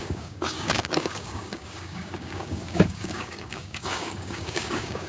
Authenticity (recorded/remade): remade